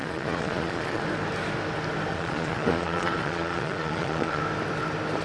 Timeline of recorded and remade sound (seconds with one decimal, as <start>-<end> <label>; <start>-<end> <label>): 0.0-1.0 remade; 1.0-2.1 recorded; 2.1-4.4 remade; 4.4-5.2 recorded